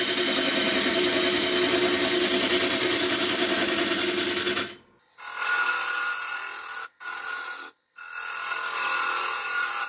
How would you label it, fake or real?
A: real